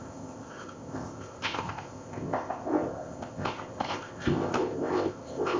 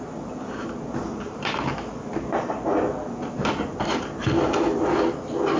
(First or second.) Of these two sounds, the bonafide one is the second